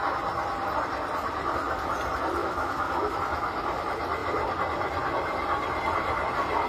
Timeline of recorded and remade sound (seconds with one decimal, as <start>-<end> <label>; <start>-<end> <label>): 0.0-2.4 recorded; 2.4-3.2 remade; 3.2-6.7 recorded